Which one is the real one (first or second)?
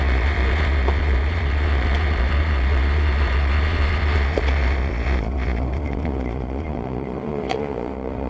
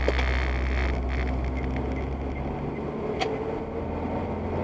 second